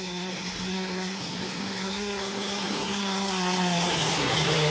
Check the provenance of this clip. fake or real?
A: fake